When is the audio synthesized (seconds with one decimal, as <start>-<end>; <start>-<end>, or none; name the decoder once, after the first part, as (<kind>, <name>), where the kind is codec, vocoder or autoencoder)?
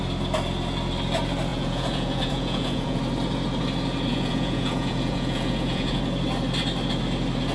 1.5-3.0 (vocoder, Vocos); 4.1-6.0